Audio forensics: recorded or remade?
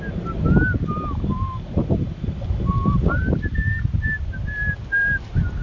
recorded